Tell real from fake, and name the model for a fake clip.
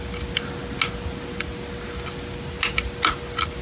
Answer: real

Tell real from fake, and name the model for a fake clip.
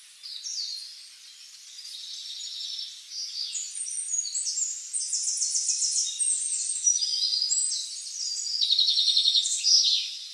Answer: real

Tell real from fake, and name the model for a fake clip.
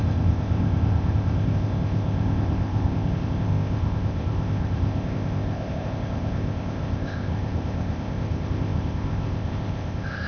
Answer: fake, codec, ZipCodec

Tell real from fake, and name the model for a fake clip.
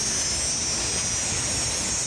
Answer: real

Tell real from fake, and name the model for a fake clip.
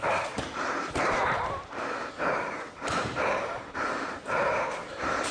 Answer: fake, vocoder, BigVGAN v2